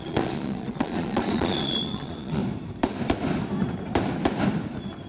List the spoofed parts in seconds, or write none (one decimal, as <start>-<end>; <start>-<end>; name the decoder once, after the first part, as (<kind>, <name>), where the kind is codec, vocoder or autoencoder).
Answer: 0.0-2.4 (vocoder, Vocos)